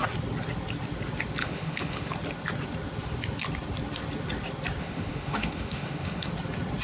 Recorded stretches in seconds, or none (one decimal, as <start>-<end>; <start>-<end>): 0.0-1.4; 2.1-4.8; 6.3-6.8